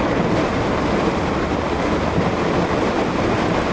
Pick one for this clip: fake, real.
real